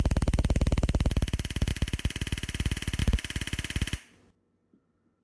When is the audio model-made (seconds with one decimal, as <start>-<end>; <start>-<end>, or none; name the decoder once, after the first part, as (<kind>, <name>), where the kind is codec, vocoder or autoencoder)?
none